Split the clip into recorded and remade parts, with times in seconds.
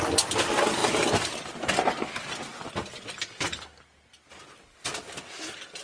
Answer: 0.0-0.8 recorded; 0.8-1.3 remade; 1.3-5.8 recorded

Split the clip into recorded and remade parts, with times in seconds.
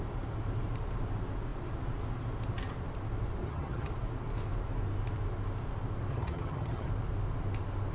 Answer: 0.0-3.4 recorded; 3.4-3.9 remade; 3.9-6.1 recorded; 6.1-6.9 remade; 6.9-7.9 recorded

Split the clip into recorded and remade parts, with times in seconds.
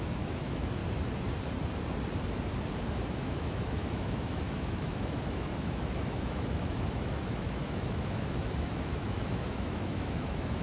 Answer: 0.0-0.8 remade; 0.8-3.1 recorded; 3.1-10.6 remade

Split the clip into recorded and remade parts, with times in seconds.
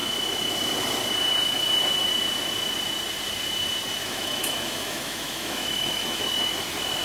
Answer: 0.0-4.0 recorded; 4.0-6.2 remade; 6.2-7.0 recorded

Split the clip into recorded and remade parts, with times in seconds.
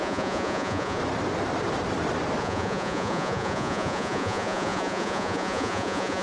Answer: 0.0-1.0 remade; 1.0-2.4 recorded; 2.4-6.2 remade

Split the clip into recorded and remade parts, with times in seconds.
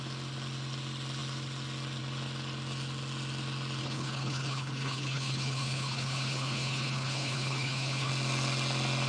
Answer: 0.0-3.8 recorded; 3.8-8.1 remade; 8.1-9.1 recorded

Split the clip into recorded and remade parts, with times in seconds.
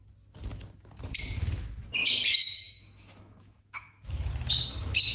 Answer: 0.0-2.4 recorded; 2.4-4.3 remade; 4.3-5.1 recorded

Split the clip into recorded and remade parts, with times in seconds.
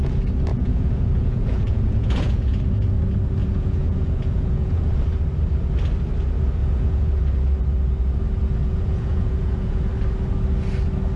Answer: 0.0-0.5 recorded; 0.5-2.6 remade; 2.6-3.4 recorded; 3.4-4.9 remade; 4.9-6.6 recorded; 6.6-7.2 remade; 7.2-8.6 recorded; 8.6-9.9 remade; 9.9-11.2 recorded